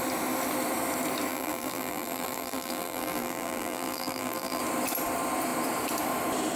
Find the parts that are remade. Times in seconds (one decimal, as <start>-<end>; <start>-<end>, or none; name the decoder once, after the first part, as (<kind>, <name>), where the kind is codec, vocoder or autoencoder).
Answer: 1.3-4.6 (vocoder, BigVGAN v2)